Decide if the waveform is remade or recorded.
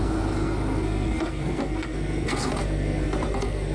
remade